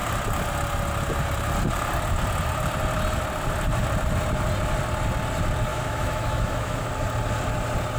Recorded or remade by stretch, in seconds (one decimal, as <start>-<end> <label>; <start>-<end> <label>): 0.0-5.7 recorded; 5.7-6.9 remade; 6.9-8.0 recorded